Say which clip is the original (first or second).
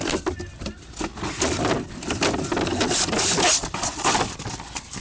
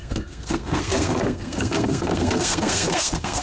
first